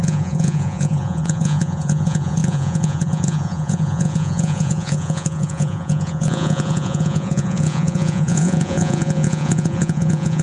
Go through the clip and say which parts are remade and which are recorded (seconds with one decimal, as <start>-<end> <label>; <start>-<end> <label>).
0.0-10.4 remade